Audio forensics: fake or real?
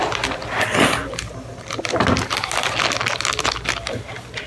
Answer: real